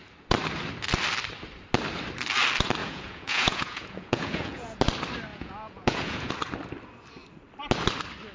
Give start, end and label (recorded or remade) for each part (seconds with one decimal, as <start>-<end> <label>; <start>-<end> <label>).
0.0-2.8 recorded; 2.8-4.8 remade; 4.8-5.3 recorded; 5.3-6.3 remade; 6.3-8.3 recorded